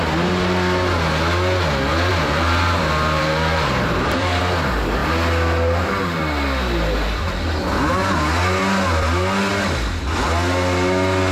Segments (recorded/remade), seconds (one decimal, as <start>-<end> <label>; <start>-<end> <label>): 0.0-2.1 recorded; 2.1-4.4 remade; 4.4-11.3 recorded